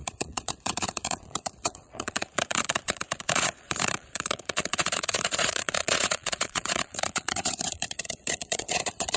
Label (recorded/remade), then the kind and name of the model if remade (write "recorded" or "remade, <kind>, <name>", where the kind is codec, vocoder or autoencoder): remade, vocoder, Vocos